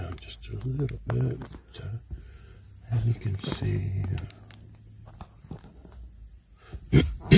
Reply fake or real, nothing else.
real